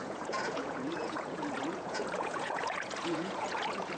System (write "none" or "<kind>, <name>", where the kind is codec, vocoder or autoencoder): vocoder, Vocos